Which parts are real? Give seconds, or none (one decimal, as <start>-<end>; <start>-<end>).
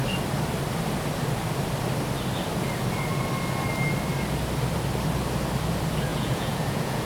0.0-6.1